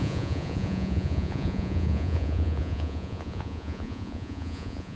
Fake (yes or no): yes